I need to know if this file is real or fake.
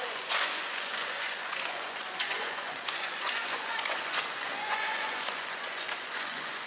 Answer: fake